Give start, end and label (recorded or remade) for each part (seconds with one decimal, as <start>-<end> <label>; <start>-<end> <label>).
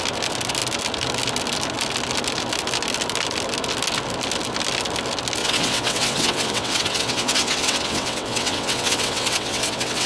0.0-5.4 recorded; 5.4-10.1 remade